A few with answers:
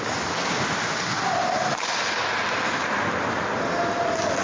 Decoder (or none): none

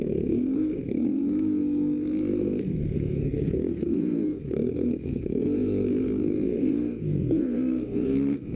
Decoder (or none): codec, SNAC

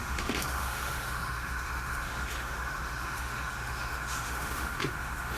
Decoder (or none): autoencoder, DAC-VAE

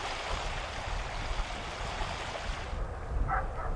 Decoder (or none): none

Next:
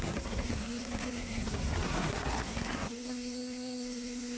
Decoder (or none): codec, SNAC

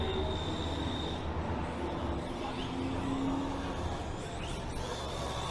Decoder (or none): none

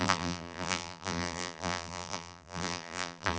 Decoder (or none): vocoder, BigVGAN v2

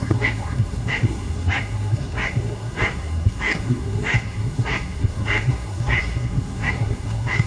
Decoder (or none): codec, SNAC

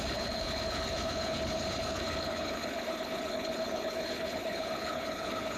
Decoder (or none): codec, HILCodec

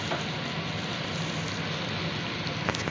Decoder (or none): none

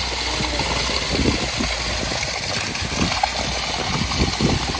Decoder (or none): none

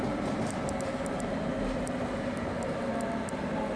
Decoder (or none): vocoder, BigVGAN v2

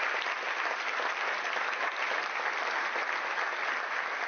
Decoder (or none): none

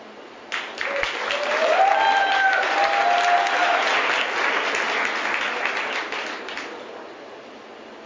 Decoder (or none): none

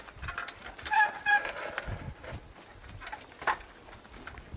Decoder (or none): none